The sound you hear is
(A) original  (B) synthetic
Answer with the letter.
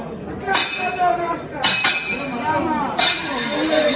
A